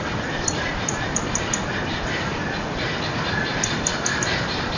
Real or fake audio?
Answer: fake